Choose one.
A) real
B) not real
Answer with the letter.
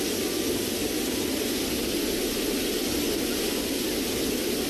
A